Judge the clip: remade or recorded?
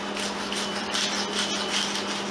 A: recorded